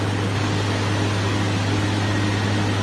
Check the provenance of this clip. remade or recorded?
recorded